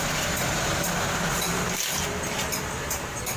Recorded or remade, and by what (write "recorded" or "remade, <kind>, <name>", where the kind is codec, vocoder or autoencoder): recorded